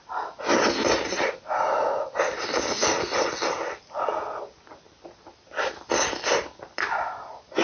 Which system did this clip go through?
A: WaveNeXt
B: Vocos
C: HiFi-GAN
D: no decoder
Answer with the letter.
D